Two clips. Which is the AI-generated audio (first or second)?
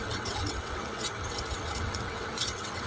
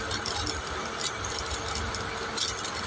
first